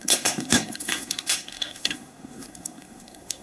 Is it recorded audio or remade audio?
remade